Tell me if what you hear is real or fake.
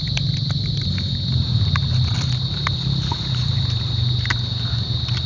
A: real